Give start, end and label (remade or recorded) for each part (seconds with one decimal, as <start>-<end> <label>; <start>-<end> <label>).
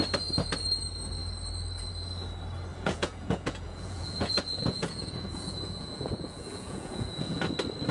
0.0-2.7 recorded; 2.7-7.4 remade; 7.4-7.9 recorded